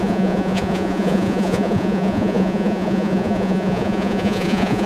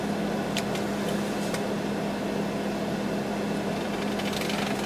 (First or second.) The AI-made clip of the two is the first